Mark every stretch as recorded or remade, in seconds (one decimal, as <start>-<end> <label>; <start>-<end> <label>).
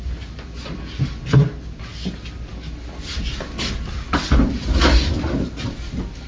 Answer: 0.0-6.3 recorded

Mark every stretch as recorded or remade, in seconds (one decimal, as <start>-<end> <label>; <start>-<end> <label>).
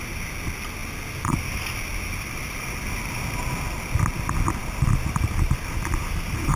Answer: 0.0-0.8 recorded; 0.8-3.9 remade; 3.9-4.6 recorded; 4.6-6.6 remade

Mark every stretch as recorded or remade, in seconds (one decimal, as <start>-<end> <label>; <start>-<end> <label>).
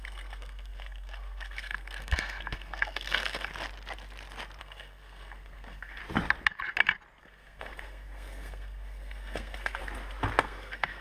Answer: 0.0-3.5 remade; 3.5-4.6 recorded; 4.6-6.0 remade; 6.0-7.2 recorded; 7.2-9.8 remade; 9.8-10.4 recorded; 10.4-11.0 remade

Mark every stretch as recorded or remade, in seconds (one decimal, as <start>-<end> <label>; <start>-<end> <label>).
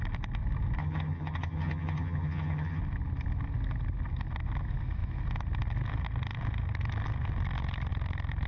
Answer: 0.0-0.8 recorded; 0.8-2.8 remade; 2.8-8.5 recorded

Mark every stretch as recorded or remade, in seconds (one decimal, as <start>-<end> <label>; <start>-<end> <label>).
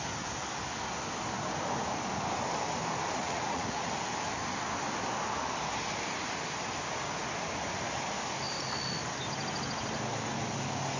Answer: 0.0-3.2 recorded; 3.2-3.9 remade; 3.9-11.0 recorded